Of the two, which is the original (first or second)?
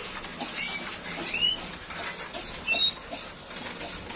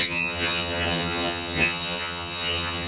first